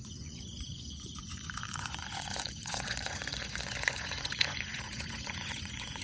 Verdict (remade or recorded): remade